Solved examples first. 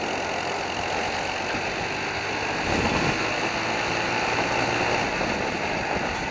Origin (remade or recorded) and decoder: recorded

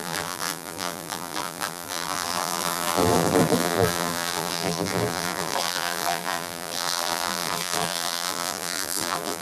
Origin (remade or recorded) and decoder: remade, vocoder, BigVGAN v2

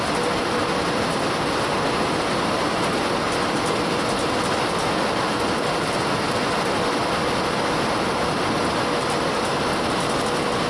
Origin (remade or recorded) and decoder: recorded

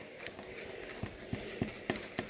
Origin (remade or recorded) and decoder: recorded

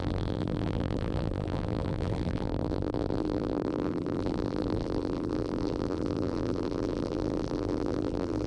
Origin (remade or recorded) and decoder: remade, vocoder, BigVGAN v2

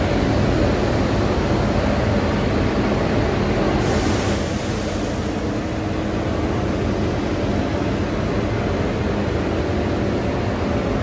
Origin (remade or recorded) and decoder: recorded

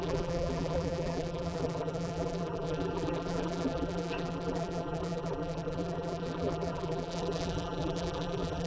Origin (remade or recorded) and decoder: remade, vocoder, BigVGAN v2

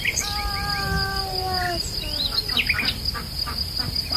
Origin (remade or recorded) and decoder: recorded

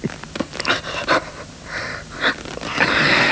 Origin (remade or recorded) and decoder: remade, vocoder, BigVGAN v2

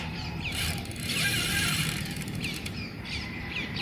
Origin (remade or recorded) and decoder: remade, vocoder, BigVGAN v2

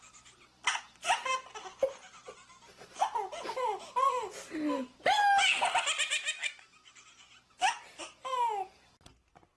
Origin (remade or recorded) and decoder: recorded